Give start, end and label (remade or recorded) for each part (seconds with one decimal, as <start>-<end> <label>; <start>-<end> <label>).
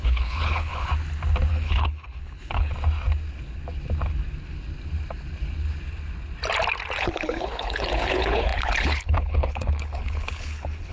0.0-0.9 remade; 0.9-1.5 recorded; 1.5-2.7 remade; 2.7-7.0 recorded; 7.0-10.9 remade